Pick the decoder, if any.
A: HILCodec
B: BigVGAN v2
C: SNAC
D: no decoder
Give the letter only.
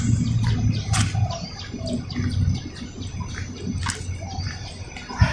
D